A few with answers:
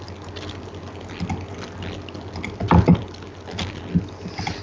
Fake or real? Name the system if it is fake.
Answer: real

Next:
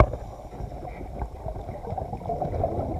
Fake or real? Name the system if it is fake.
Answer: real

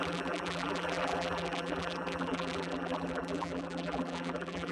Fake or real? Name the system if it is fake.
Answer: fake, vocoder, BigVGAN v2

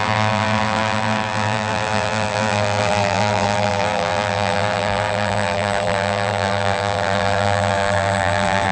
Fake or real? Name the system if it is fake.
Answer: fake, vocoder, BigVGAN v2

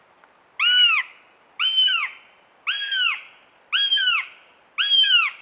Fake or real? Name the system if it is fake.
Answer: real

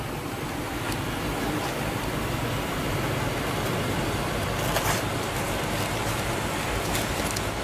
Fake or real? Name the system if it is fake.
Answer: fake, vocoder, BigVGAN v2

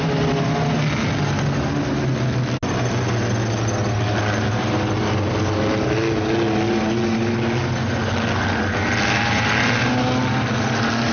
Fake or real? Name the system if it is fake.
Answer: real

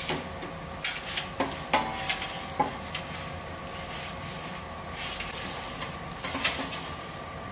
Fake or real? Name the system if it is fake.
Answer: real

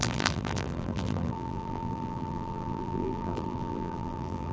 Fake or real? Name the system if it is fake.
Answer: fake, vocoder, BigVGAN v2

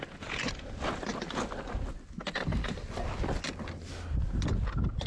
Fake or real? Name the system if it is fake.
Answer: real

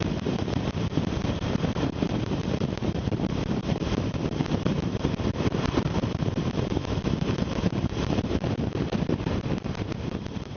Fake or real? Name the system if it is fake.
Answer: fake, vocoder, BigVGAN v2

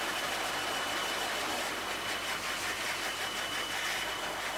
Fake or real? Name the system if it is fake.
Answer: real